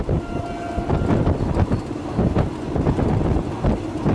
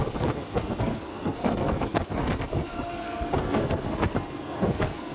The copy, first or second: second